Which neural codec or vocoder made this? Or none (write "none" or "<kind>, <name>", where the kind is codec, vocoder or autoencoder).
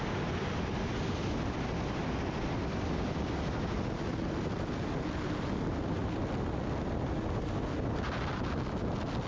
none